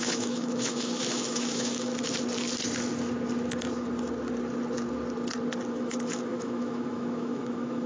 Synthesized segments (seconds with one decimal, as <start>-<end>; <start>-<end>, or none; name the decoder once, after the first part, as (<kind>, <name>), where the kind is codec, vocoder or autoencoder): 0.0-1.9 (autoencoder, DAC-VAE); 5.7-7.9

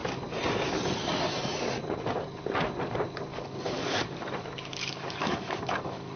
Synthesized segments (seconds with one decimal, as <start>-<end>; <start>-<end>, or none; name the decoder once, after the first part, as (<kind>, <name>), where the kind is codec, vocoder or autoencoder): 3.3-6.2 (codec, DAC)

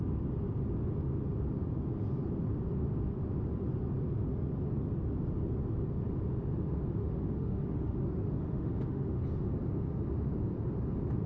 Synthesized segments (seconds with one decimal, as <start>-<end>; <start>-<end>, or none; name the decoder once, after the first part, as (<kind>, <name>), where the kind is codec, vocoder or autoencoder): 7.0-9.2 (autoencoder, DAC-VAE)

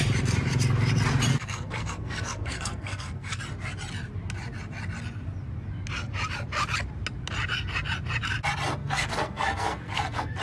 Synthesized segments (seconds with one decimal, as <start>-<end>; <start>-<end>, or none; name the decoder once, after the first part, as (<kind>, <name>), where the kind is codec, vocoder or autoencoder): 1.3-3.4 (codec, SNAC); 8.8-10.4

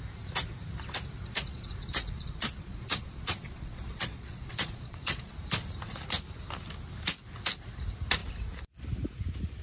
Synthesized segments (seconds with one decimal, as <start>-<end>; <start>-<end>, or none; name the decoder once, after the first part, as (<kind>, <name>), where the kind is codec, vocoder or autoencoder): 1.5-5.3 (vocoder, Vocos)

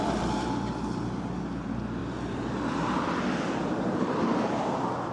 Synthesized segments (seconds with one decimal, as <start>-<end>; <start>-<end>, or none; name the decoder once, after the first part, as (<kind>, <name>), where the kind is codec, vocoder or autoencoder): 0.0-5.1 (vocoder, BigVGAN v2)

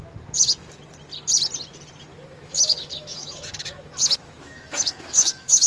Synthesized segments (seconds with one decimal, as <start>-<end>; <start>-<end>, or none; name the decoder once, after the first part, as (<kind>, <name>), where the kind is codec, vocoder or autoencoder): 2.1-5.7 (autoencoder, DAC-VAE)